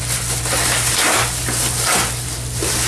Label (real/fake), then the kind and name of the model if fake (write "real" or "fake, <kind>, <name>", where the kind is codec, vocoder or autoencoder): real